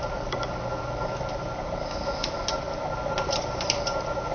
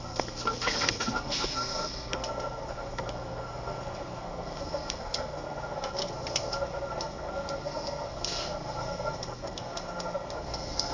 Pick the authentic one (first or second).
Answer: first